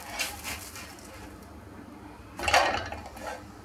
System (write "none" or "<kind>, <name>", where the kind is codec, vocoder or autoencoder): none